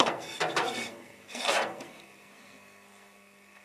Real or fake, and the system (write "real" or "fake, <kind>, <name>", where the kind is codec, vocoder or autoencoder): fake, codec, SNAC